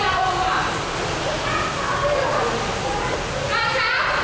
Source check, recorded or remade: recorded